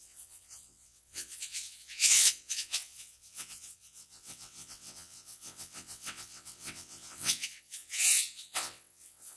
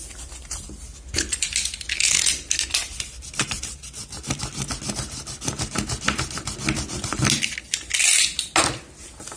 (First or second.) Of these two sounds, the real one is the second